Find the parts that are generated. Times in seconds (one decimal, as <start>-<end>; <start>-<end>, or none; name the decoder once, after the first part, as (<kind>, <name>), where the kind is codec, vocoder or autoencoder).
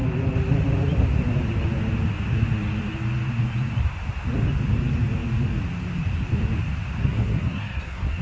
7.0-8.2 (codec, SNAC)